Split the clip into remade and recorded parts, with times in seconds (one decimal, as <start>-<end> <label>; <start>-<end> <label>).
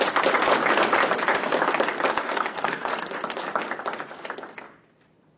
0.0-2.2 recorded; 2.2-2.9 remade; 2.9-5.4 recorded